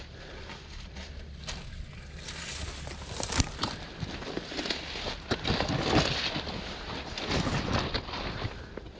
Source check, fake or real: real